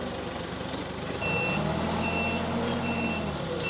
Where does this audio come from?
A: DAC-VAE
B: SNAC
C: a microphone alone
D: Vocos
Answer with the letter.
C